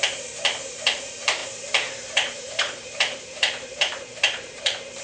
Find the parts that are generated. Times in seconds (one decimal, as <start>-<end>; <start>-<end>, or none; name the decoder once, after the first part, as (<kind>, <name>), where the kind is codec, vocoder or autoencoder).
0.0-5.0 (vocoder, BigVGAN v2)